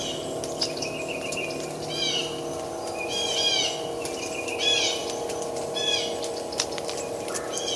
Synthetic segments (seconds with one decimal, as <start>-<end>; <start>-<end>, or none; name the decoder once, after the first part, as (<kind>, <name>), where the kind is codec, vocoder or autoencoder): none